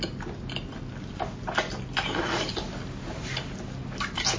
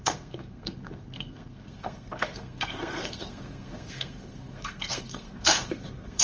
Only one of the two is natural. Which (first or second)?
first